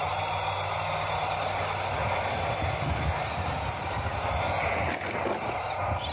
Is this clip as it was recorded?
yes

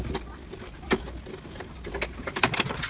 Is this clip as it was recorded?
yes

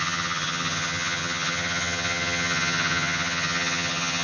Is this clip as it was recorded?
no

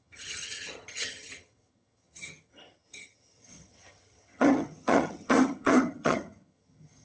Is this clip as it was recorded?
no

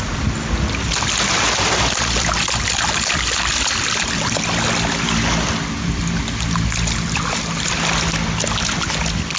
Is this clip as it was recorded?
yes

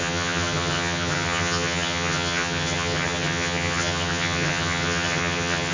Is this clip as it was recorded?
no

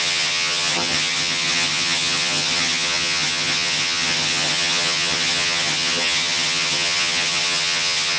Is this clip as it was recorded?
no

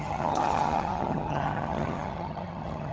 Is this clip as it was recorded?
no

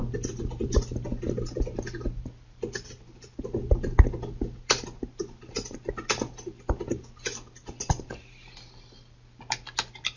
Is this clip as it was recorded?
yes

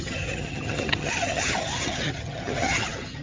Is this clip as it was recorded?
no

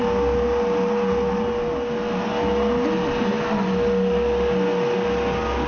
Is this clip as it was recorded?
yes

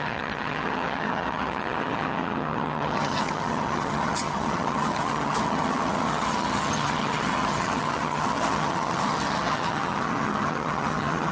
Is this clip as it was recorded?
no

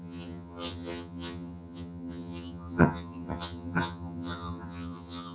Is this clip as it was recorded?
no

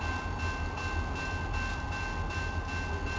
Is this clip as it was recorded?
yes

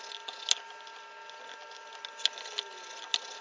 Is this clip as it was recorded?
yes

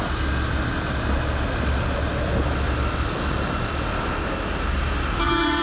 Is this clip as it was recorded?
yes